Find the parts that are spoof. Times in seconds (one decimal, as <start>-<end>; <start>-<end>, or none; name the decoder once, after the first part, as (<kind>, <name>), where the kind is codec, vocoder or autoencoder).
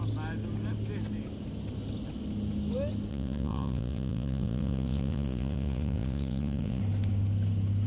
3.1-6.8 (vocoder, Vocos)